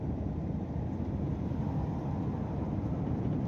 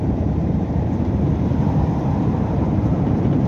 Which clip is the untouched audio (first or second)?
first